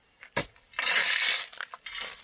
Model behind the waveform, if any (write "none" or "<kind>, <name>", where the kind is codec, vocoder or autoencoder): none